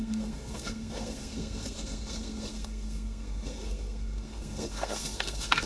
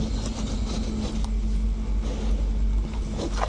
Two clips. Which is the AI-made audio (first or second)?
first